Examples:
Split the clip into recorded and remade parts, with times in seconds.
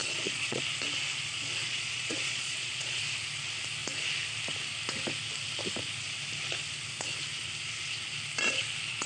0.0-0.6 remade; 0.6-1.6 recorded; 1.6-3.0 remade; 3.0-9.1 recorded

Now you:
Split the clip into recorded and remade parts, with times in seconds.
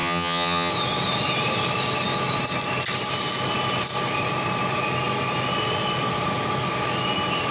0.0-0.7 remade; 0.7-7.5 recorded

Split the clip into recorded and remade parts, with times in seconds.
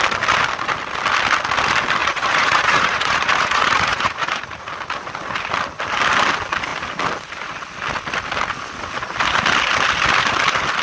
0.0-2.0 recorded; 2.0-4.7 remade; 4.7-10.8 recorded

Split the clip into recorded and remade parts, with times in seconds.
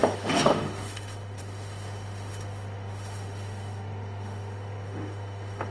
0.0-5.7 remade